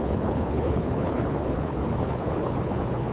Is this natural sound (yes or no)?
no